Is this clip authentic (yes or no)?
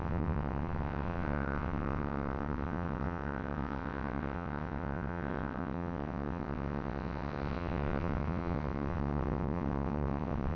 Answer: no